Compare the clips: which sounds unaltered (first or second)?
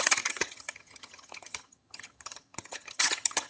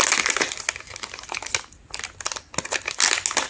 second